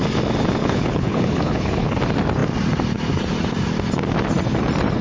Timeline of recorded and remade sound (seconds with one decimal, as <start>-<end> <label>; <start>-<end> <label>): 0.0-0.6 recorded; 0.6-2.0 remade; 2.0-5.0 recorded